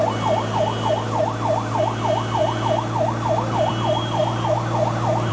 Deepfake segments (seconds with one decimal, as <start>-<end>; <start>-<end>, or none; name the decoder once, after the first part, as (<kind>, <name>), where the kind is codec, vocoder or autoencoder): none